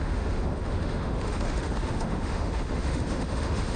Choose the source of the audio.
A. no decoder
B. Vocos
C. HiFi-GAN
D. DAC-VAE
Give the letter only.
D